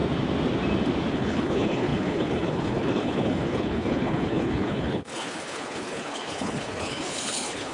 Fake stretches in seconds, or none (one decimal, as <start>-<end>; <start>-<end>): 1.1-7.7